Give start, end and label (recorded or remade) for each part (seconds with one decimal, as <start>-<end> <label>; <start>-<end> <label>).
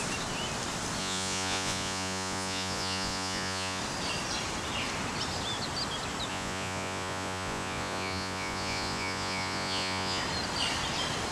0.0-1.0 recorded; 1.0-3.8 remade; 3.8-6.3 recorded; 6.3-10.2 remade; 10.2-11.3 recorded